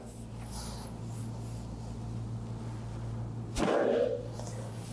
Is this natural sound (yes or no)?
yes